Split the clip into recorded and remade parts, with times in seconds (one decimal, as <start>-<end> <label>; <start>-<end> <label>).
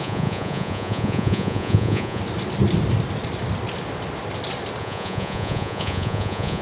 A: 0.0-2.2 remade; 2.2-4.8 recorded; 4.8-6.6 remade